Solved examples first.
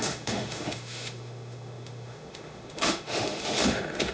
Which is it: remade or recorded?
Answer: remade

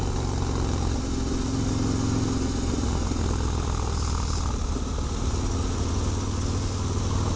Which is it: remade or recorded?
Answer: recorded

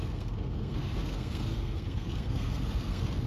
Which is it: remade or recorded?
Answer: remade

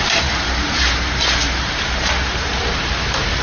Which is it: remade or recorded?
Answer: remade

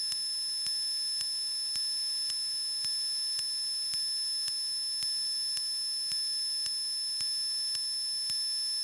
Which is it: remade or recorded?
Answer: recorded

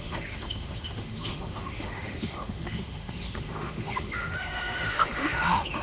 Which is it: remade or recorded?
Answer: remade